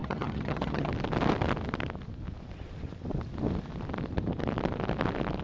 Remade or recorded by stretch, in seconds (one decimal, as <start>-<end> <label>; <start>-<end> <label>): 0.0-0.9 remade; 0.9-5.4 recorded